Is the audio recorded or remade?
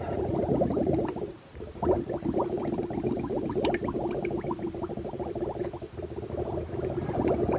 remade